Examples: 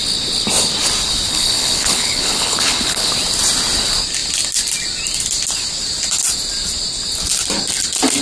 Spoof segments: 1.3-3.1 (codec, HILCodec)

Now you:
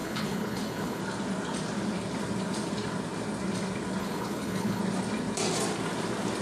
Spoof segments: 0.0-1.0 (codec, HILCodec); 4.0-4.8

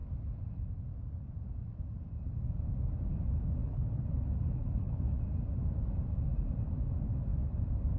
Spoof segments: 3.6-5.2 (codec, HILCodec)

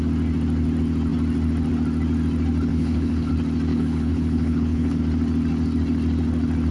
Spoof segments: 2.7-3.3 (codec, HILCodec); 3.7-5.0

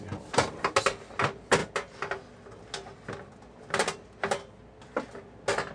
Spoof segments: none